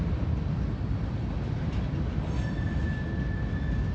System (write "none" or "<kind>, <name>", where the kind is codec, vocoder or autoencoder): none